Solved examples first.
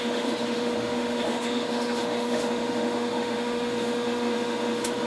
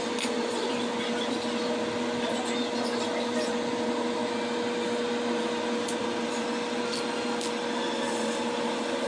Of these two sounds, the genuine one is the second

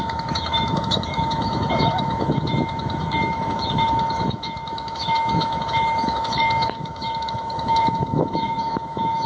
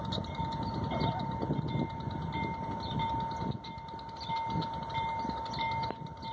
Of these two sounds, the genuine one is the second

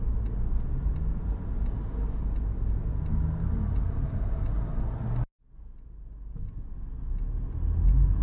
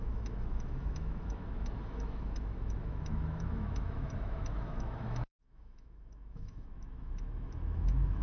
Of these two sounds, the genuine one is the first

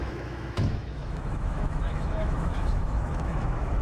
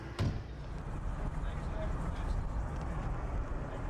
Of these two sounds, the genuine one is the second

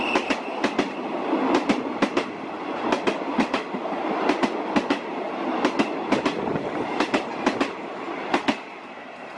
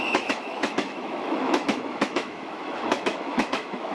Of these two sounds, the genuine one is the first